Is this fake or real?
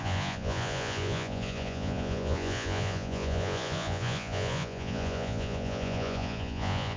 fake